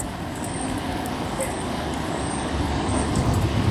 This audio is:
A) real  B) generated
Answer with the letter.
B